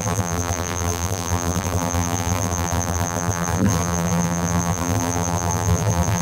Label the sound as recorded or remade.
remade